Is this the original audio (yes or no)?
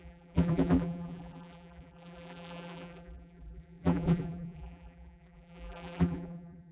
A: no